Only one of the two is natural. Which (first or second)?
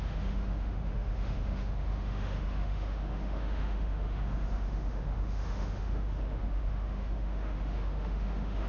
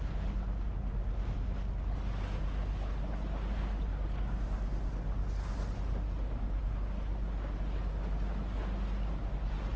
second